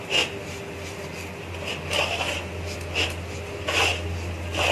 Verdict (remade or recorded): recorded